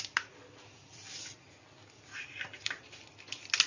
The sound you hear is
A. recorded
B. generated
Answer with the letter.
A